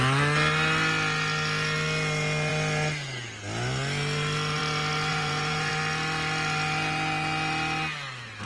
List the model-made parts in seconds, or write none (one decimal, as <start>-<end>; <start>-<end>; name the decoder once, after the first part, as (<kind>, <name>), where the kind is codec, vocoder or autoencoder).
5.1-5.7 (vocoder, Vocos)